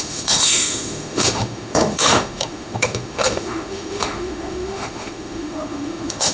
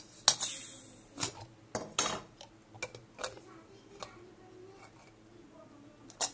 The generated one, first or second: first